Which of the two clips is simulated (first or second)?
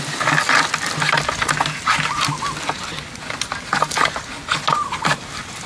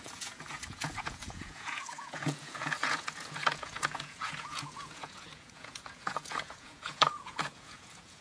second